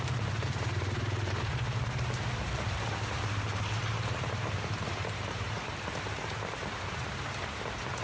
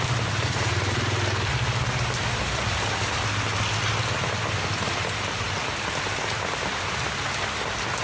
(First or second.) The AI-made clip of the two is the first